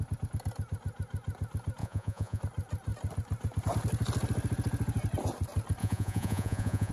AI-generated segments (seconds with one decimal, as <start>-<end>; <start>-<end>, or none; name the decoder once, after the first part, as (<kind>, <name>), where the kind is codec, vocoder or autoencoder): 1.8-2.4 (vocoder, Vocos); 5.8-6.9